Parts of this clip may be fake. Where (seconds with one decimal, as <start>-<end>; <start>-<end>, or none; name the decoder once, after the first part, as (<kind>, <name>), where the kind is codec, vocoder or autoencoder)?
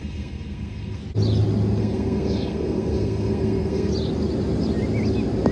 0.0-1.0 (codec, SNAC); 1.8-3.9